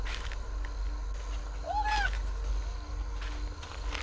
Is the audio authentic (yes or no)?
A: yes